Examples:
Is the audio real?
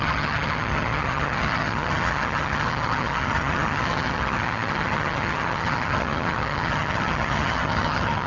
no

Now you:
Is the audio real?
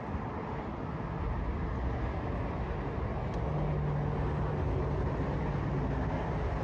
yes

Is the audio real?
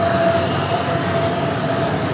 yes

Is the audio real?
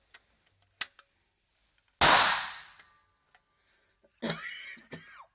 yes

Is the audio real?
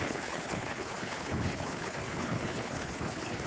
no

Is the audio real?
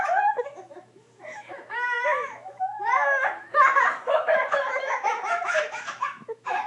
no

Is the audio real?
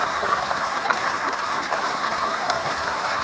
no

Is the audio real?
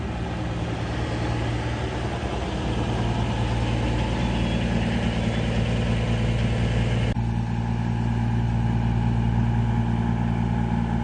yes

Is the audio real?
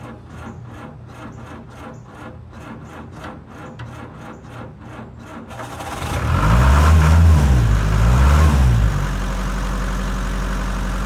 yes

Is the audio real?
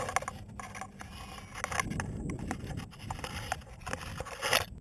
yes